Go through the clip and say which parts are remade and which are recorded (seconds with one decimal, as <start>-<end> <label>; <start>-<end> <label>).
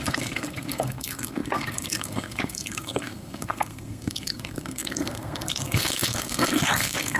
0.0-7.2 remade